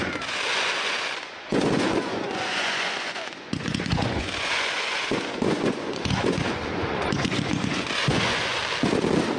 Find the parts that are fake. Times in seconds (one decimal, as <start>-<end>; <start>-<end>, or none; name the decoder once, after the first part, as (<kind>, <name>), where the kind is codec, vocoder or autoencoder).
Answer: 0.0-8.6 (vocoder, Vocos)